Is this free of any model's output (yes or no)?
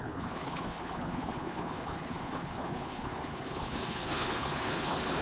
no